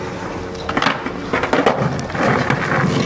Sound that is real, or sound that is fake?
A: real